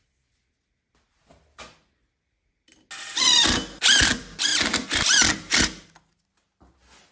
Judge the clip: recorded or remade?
recorded